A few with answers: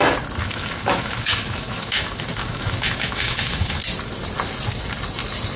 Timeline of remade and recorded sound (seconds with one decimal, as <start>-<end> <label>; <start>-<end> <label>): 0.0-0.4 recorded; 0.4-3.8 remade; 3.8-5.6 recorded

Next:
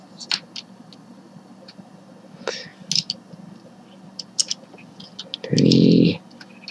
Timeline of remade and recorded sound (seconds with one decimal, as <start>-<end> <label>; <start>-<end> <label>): 0.0-6.7 recorded

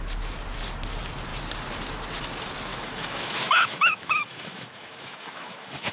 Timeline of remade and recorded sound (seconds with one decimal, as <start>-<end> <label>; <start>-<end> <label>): 0.0-2.7 recorded; 2.7-5.9 remade